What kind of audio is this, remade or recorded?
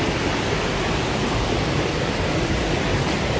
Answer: recorded